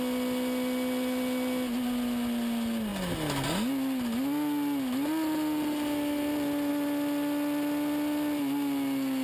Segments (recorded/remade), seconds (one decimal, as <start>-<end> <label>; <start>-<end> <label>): 0.0-9.2 recorded